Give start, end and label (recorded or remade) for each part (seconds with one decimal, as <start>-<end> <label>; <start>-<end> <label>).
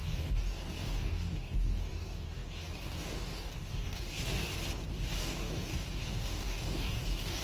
0.0-4.5 remade; 4.5-5.2 recorded; 5.2-7.4 remade